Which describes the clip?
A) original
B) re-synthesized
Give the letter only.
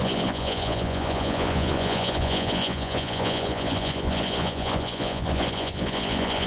B